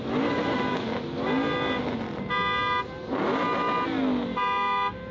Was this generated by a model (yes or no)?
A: no